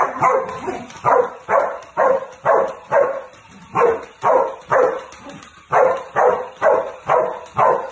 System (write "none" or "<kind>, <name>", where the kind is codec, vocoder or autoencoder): vocoder, BigVGAN v2